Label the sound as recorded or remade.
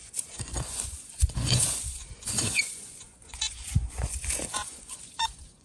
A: remade